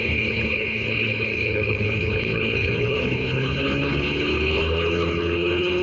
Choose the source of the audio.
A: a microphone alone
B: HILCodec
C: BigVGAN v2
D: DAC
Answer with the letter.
B